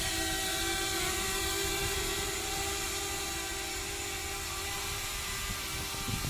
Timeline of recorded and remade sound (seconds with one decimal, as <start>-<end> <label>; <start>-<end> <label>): 0.0-1.7 recorded; 1.7-2.5 remade; 2.5-6.3 recorded